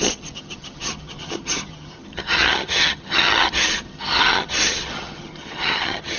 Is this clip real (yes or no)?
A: no